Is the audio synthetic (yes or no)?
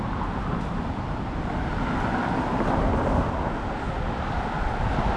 no